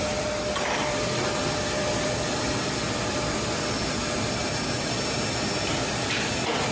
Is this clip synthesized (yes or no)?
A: yes